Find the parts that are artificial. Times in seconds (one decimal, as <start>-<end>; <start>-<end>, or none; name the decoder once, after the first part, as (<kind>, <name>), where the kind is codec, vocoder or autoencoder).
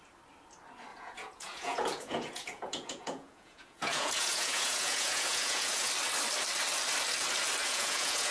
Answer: 0.9-5.9 (vocoder, Vocos); 7.6-8.3